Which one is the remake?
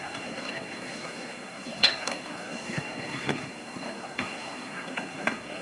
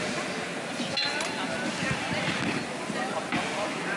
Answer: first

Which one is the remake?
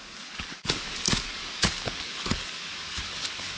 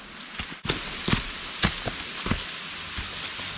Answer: first